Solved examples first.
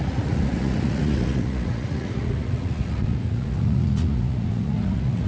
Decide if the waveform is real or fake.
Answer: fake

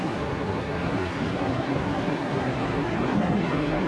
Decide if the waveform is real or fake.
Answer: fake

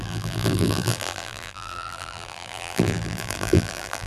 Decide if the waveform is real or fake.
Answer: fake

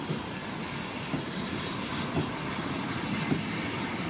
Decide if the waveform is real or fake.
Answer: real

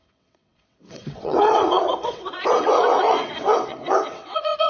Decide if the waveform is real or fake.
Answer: fake